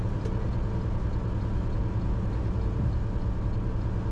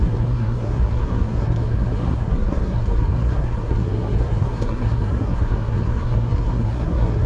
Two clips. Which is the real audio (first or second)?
first